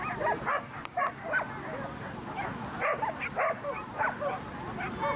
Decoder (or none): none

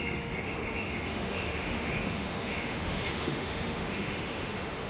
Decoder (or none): autoencoder, DAC-VAE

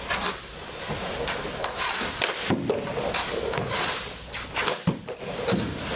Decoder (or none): none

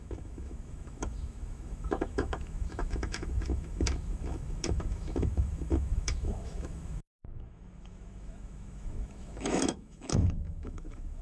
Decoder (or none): autoencoder, DAC-VAE